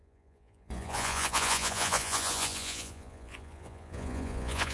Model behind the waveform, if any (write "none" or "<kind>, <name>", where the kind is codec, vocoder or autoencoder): vocoder, Vocos